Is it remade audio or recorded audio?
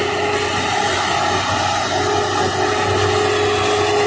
recorded